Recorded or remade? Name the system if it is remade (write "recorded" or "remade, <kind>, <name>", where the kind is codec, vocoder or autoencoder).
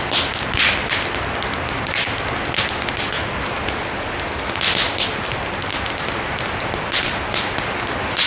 recorded